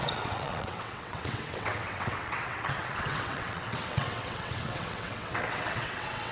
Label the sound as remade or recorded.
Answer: remade